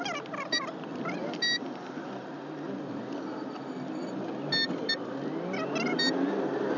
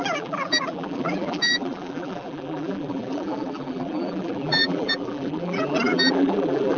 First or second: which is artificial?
second